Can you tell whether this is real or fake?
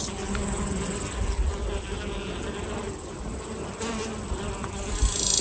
real